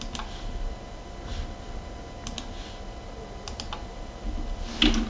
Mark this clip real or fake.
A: real